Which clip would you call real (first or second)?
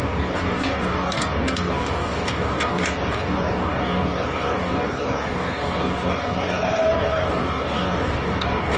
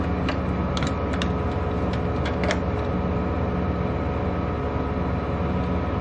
second